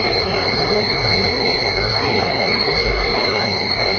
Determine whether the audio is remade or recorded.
remade